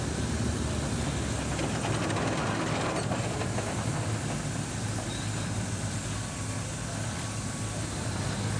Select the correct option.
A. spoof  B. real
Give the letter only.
B